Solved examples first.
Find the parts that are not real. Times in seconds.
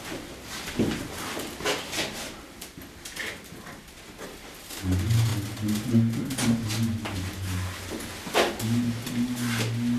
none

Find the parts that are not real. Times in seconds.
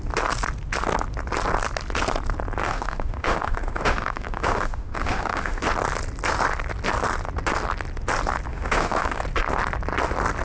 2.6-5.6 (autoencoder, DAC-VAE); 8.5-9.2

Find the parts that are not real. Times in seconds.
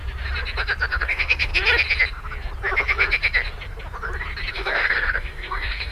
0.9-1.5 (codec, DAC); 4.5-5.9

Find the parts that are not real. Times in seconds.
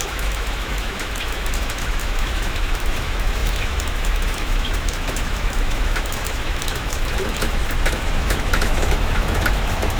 0.0-10.0 (autoencoder, DAC-VAE)